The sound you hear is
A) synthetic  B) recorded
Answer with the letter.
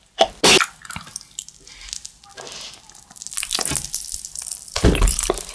B